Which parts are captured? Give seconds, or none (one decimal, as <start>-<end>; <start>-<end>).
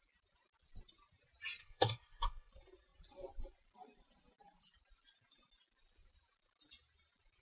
0.0-1.6; 2.5-7.4